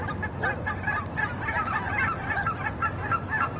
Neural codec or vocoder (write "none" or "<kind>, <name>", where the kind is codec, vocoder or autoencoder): none